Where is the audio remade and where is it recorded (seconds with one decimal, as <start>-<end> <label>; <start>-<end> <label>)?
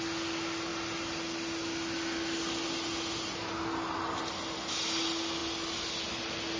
0.0-6.6 recorded